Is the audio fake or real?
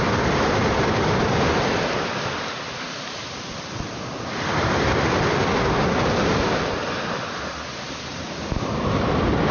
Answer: real